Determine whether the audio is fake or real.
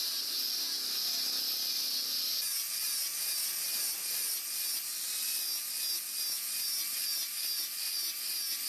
real